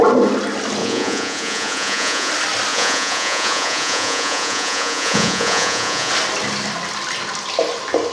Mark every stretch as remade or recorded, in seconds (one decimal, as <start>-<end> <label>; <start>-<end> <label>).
0.0-0.8 recorded; 0.8-2.3 remade; 2.3-2.7 recorded; 2.7-6.1 remade; 6.1-8.1 recorded